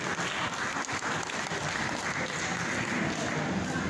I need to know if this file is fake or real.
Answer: real